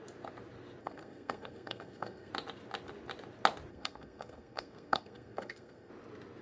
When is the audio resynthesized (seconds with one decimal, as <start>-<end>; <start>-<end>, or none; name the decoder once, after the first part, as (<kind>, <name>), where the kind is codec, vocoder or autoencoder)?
0.8-2.3 (codec, SNAC); 3.7-5.9